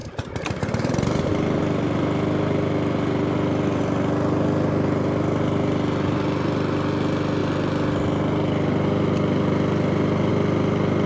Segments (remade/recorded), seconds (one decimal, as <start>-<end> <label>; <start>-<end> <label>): 0.0-1.6 remade; 1.6-11.1 recorded